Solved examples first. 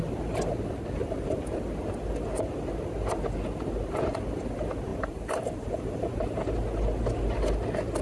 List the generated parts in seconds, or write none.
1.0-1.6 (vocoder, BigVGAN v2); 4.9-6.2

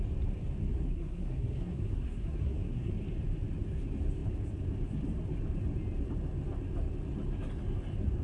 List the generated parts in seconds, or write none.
0.7-2.9 (codec, SNAC)

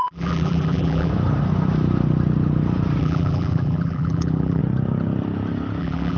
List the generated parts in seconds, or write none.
0.0-1.1 (vocoder, BigVGAN v2); 3.0-4.6; 5.8-6.2

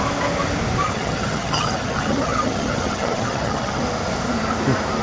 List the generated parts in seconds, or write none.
0.8-3.8 (vocoder, HiFi-GAN)

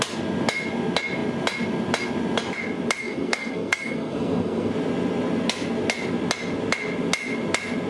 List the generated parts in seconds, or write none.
3.0-4.7 (codec, SNAC)

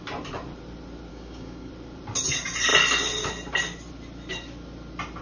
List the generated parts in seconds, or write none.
1.1-1.7 (codec, DAC)